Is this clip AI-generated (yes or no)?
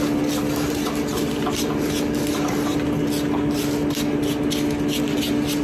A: no